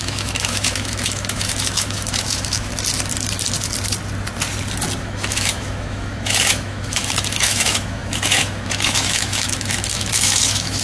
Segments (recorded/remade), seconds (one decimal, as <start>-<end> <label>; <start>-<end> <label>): 0.0-2.7 remade; 2.7-5.0 recorded; 5.0-10.8 remade